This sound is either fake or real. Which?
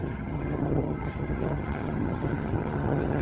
fake